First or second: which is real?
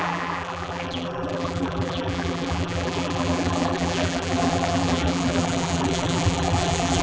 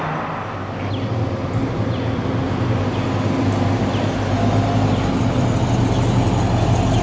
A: second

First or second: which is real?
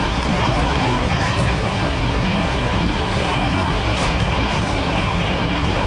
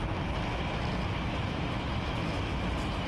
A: second